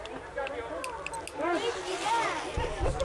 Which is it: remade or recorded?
recorded